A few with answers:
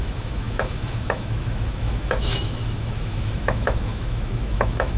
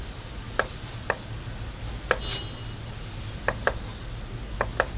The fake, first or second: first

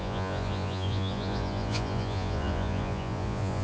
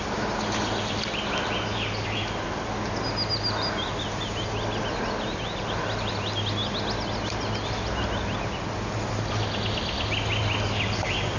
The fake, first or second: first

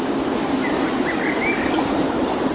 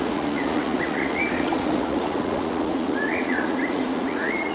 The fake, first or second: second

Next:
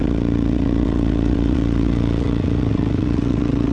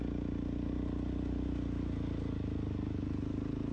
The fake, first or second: first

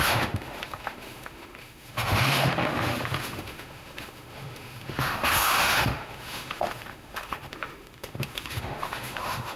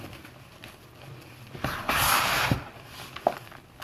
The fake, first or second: first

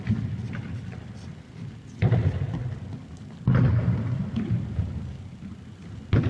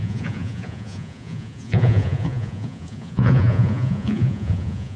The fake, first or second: second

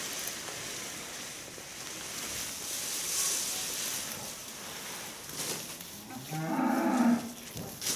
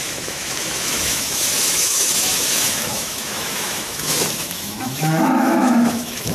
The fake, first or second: second